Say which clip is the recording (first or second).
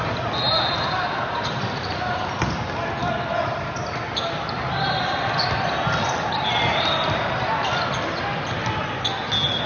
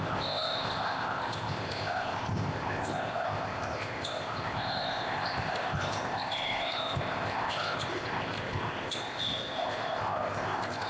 first